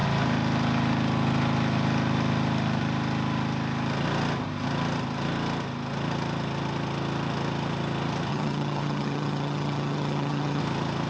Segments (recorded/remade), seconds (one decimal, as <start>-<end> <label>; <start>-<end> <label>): 0.0-8.3 recorded; 8.3-10.6 remade; 10.6-11.1 recorded

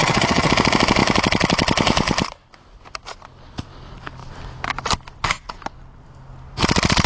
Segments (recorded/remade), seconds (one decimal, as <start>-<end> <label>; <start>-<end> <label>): 0.0-0.5 remade; 0.5-7.1 recorded

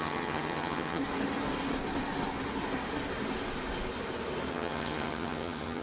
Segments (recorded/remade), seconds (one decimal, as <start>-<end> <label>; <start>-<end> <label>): 0.0-1.0 remade; 1.0-4.5 recorded; 4.5-5.8 remade

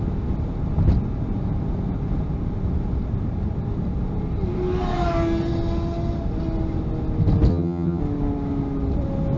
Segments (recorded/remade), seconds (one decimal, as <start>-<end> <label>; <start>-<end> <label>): 0.0-7.5 recorded; 7.5-8.0 remade; 8.0-9.4 recorded

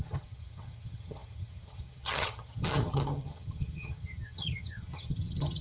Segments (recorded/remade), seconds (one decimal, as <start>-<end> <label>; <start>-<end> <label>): 0.0-5.6 remade

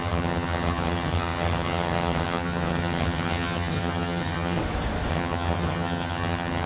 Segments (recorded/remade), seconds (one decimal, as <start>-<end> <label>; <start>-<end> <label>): 0.0-4.6 remade; 4.6-5.1 recorded; 5.1-6.7 remade